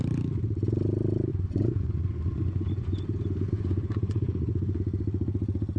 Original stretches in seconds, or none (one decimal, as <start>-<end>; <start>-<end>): 0.0-1.3; 4.8-5.8